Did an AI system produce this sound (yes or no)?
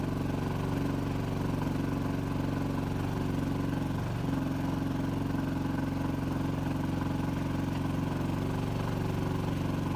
no